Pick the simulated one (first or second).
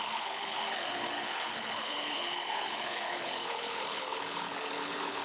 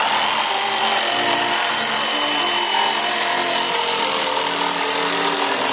first